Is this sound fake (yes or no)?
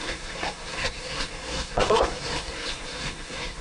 yes